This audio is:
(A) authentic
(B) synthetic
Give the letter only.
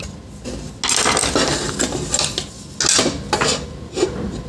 A